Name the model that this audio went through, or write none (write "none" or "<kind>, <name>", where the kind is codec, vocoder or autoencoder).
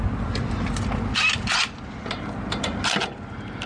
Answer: none